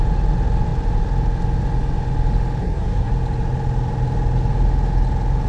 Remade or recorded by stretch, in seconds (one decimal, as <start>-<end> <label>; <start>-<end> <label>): 0.0-2.6 recorded; 2.6-3.1 remade; 3.1-5.5 recorded